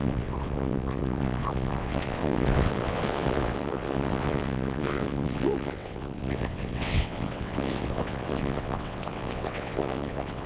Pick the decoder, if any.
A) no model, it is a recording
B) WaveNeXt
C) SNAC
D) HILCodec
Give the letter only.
B